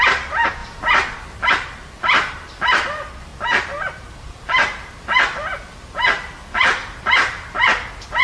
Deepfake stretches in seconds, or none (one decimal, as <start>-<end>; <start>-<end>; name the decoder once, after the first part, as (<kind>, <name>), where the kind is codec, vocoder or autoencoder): 0.0-0.6 (vocoder, BigVGAN v2); 1.5-3.3; 4.2-8.2